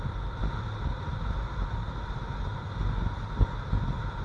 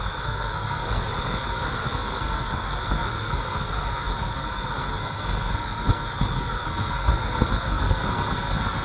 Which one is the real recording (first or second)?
first